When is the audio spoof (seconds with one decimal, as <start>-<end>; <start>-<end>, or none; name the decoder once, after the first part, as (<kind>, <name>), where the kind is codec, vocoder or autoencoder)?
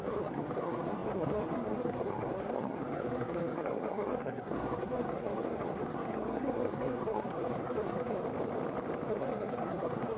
0.0-8.2 (codec, SNAC); 9.1-10.2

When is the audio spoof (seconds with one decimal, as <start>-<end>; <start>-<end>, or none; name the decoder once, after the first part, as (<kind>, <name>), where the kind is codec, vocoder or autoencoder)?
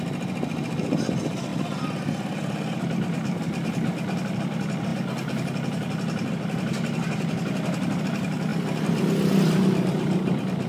none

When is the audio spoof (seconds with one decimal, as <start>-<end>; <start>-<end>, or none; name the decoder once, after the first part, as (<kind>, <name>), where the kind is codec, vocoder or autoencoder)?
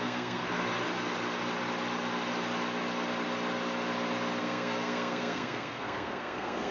0.0-0.4 (codec, SNAC); 4.4-6.7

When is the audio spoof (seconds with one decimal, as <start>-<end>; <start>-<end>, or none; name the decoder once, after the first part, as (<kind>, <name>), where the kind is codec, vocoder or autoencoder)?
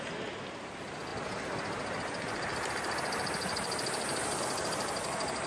none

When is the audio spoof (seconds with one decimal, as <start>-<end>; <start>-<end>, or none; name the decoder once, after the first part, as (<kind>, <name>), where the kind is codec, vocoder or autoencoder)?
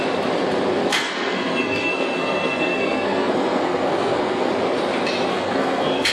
0.9-4.5 (codec, SNAC); 5.3-6.1